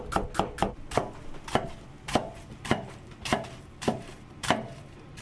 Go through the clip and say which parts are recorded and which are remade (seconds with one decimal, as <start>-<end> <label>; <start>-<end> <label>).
0.0-2.2 recorded; 2.2-4.8 remade; 4.8-5.2 recorded